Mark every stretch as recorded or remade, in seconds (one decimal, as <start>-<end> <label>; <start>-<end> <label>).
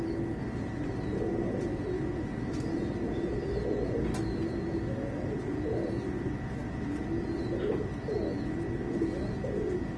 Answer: 0.0-10.0 recorded